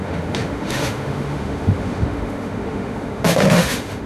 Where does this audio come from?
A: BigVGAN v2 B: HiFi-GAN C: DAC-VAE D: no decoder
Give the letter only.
C